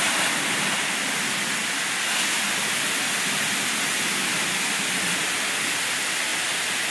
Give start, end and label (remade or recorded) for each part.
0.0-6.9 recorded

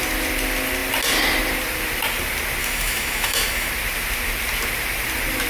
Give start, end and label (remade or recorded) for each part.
0.0-2.6 recorded; 2.6-3.7 remade; 3.7-5.5 recorded

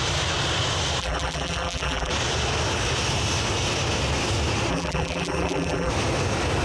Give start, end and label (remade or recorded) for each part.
0.0-1.0 recorded; 1.0-2.1 remade; 2.1-4.7 recorded; 4.7-5.9 remade; 5.9-6.6 recorded

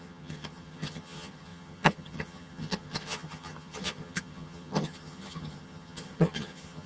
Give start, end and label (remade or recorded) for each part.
0.0-6.9 remade

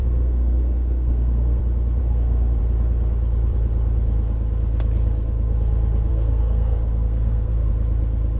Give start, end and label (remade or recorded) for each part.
0.0-1.6 remade; 1.6-2.0 recorded; 2.0-2.6 remade; 2.6-6.1 recorded; 6.1-7.7 remade; 7.7-8.4 recorded

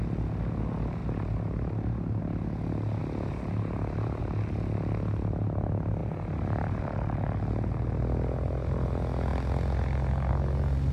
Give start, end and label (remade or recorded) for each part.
0.0-1.0 recorded; 1.0-2.2 remade; 2.2-3.0 recorded; 3.0-4.2 remade; 4.2-6.0 recorded; 6.0-6.8 remade; 6.8-10.9 recorded